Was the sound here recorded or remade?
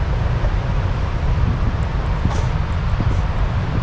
remade